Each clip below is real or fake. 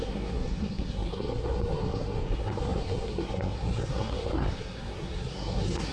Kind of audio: fake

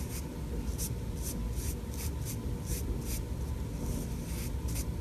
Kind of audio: real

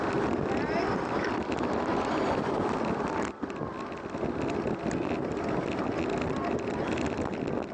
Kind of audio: real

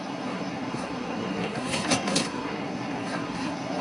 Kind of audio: fake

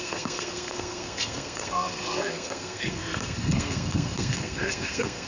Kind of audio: fake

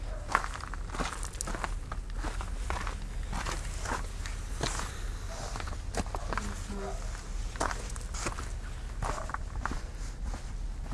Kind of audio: real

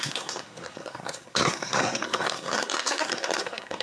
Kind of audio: fake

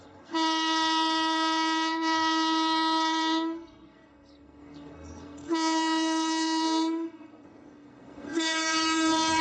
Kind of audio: fake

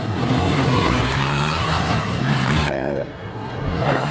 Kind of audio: fake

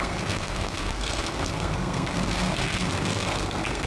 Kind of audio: fake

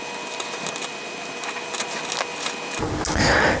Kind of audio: real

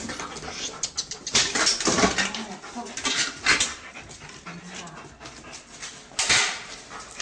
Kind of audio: real